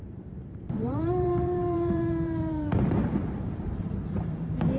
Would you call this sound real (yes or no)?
no